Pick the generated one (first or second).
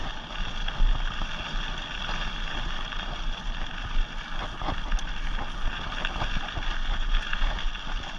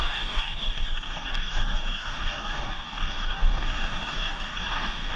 second